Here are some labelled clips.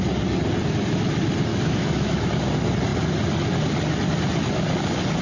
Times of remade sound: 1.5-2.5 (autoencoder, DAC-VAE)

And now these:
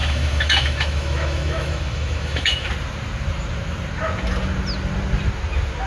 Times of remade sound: 0.0-2.7 (autoencoder, DAC-VAE)

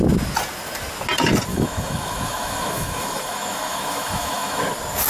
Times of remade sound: 1.5-4.6 (autoencoder, DAC-VAE)

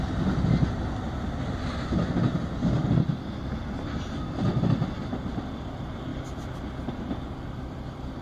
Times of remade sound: none

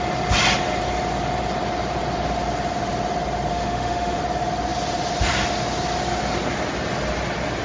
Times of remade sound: 3.5-4.2 (autoencoder, DAC-VAE)

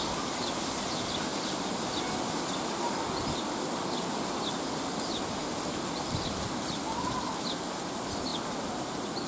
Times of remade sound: none

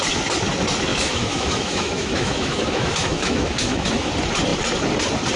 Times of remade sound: 0.9-4.1 (autoencoder, DAC-VAE)

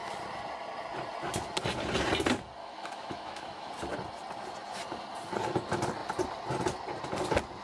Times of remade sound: 2.6-3.7 (autoencoder, DAC-VAE)